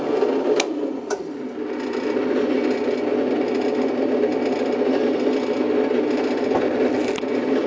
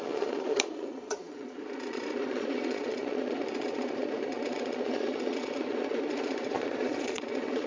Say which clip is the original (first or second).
first